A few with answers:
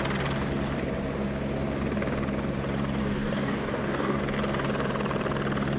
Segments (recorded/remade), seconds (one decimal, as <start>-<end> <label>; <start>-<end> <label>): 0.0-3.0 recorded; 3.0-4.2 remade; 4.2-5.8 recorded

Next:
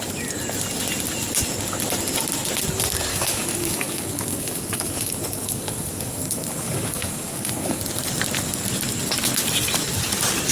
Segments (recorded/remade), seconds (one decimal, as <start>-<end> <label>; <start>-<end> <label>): 0.0-3.1 recorded; 3.1-7.8 remade; 7.8-10.5 recorded

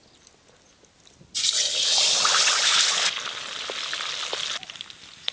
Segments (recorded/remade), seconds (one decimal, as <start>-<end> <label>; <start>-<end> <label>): 0.0-5.3 recorded

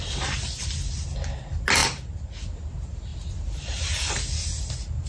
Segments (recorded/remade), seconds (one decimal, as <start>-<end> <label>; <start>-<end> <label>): 0.0-5.1 recorded

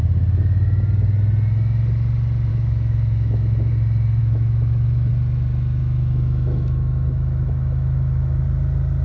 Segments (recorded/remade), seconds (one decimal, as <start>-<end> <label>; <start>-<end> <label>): 0.0-2.5 recorded; 2.5-3.7 remade; 3.7-4.2 recorded; 4.2-5.1 remade; 5.1-5.8 recorded; 5.8-8.4 remade; 8.4-9.0 recorded